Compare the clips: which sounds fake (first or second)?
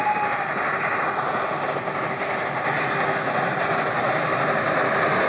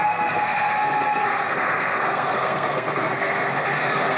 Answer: second